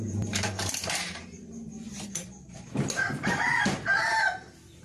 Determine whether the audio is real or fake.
fake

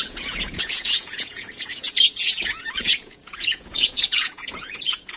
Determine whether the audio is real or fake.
fake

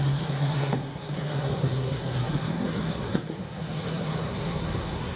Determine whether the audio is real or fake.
fake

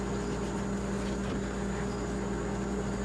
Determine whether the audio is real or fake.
real